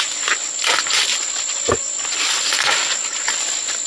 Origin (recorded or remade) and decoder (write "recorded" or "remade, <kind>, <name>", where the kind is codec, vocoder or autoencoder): recorded